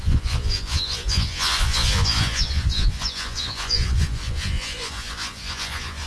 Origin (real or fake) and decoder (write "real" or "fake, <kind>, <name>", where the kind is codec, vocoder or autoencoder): fake, vocoder, Vocos